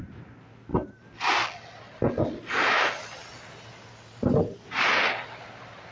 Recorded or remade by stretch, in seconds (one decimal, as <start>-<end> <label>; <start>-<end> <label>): 0.0-5.9 recorded